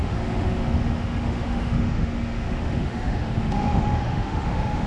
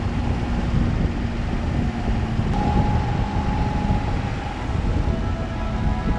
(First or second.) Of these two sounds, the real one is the second